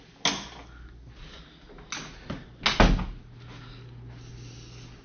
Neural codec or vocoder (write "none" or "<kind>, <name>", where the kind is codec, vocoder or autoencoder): none